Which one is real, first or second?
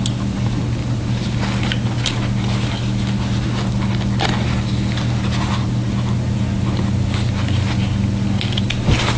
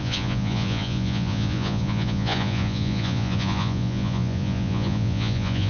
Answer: first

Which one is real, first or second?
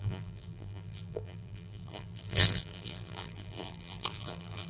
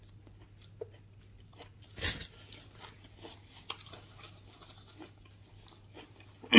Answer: second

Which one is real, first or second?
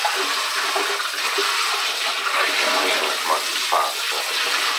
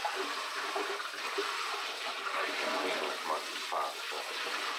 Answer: first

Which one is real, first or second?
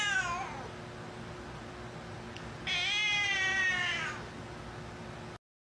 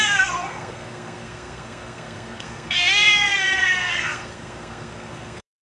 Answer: first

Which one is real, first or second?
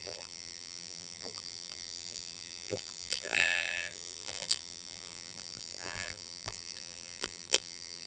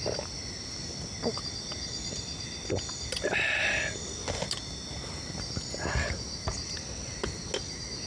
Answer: second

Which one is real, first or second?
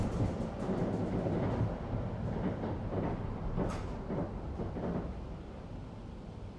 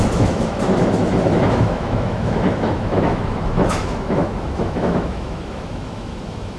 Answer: first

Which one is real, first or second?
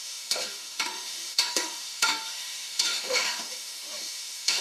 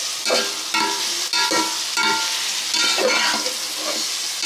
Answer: second